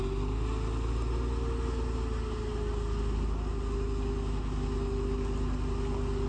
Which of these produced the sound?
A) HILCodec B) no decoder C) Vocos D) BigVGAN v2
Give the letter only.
B